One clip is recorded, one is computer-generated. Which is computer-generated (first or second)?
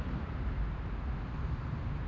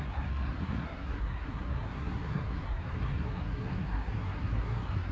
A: second